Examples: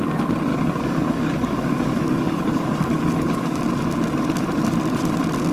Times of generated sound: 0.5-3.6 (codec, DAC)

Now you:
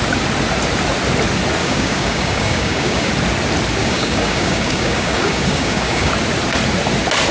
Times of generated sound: 1.6-3.1 (codec, DAC); 3.8-6.1

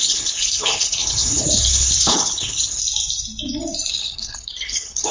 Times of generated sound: 0.0-2.8 (codec, HILCodec); 3.9-5.1